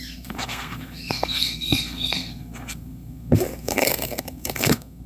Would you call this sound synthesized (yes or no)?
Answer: yes